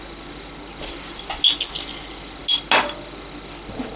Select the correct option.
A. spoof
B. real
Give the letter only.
B